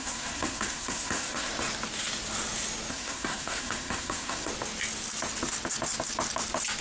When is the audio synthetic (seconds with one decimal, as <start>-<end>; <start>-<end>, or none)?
0.0-1.5; 2.9-4.5